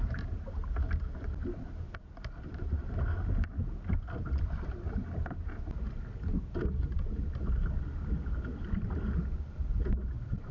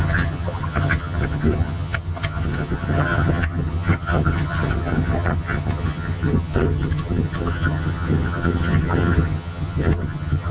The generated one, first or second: second